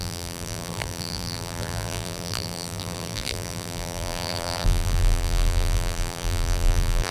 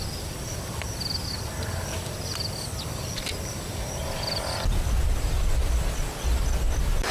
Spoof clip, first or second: first